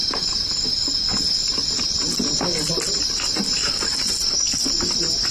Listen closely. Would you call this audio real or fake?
real